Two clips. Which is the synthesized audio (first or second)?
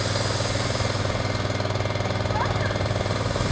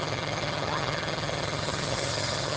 second